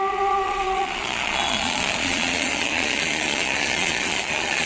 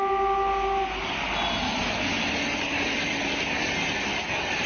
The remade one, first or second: first